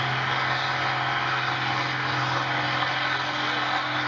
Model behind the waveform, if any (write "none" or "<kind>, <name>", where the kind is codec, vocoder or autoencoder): none